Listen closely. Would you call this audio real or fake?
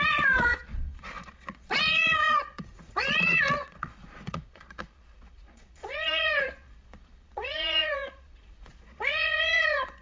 fake